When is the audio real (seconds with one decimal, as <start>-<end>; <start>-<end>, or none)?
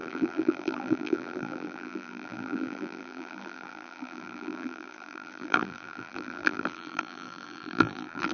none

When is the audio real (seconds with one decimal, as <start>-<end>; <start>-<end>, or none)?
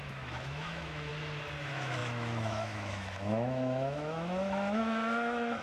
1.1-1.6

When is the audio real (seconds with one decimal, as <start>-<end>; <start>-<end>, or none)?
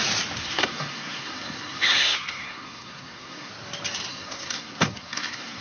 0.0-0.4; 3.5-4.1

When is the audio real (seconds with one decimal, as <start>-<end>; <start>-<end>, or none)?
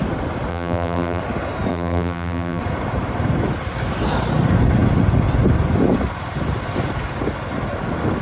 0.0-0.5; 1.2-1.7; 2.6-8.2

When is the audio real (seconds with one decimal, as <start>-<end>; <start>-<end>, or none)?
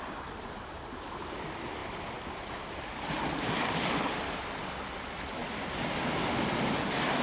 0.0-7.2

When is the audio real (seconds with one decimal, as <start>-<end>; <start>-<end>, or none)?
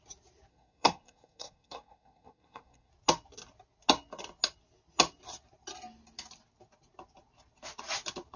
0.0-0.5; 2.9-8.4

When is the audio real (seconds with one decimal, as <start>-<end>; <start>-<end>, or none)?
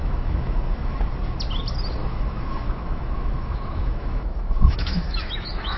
1.0-2.0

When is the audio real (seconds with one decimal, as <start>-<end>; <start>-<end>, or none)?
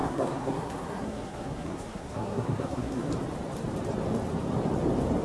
3.1-5.2